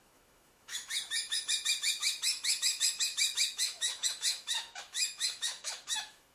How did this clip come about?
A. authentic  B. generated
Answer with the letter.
B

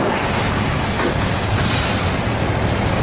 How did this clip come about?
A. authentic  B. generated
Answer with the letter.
A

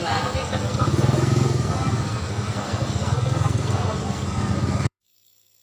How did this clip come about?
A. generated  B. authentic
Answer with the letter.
A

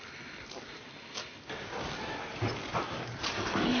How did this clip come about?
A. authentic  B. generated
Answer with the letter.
A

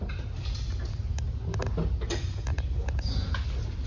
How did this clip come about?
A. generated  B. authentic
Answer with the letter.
B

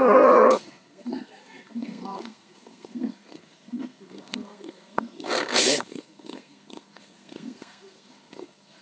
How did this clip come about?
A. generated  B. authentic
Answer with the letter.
A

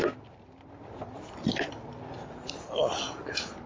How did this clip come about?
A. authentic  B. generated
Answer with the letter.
A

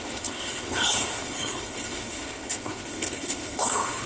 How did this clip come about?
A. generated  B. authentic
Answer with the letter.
A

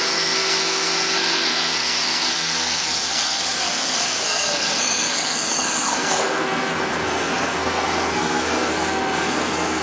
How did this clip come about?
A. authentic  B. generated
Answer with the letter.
B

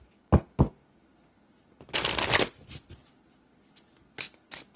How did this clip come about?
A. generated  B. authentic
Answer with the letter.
B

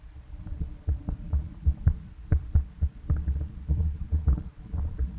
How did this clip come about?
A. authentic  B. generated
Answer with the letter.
B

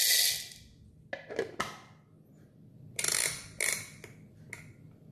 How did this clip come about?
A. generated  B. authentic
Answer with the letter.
B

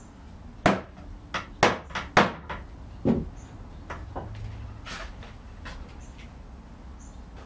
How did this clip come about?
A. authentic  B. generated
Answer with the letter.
A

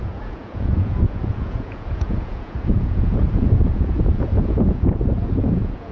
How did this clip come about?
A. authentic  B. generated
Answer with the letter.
B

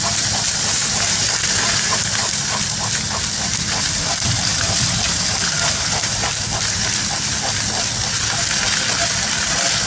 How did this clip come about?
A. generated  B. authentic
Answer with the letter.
B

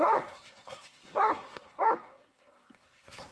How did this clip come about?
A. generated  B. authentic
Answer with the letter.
A